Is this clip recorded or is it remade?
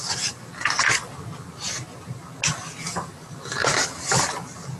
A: recorded